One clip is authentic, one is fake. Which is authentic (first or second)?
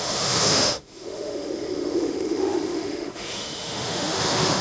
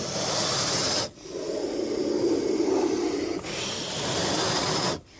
second